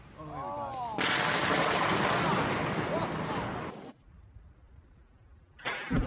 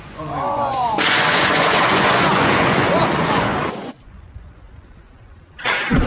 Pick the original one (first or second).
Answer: first